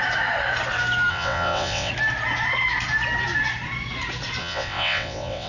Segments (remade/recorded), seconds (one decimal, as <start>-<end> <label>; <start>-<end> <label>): 0.0-1.1 recorded; 1.1-1.9 remade; 1.9-4.4 recorded; 4.4-5.5 remade